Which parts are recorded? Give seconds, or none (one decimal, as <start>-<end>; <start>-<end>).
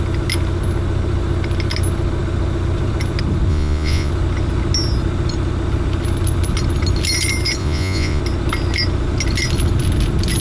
0.0-3.5; 4.1-7.6; 8.2-10.4